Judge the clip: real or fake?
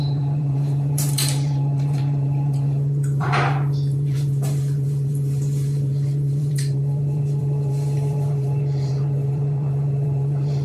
fake